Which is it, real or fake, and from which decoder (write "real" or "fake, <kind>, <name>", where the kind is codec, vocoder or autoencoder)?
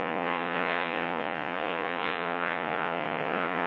fake, vocoder, Vocos